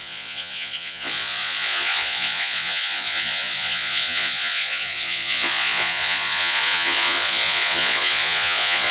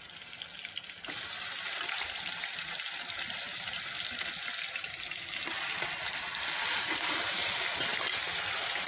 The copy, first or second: first